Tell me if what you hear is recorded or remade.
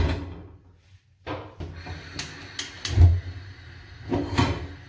recorded